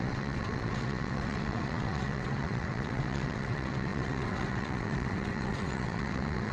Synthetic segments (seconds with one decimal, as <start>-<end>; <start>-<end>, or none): 0.0-6.5